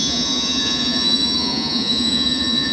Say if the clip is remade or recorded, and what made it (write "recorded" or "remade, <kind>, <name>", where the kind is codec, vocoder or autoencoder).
remade, vocoder, Vocos